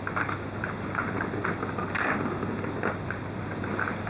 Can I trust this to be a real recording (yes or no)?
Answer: yes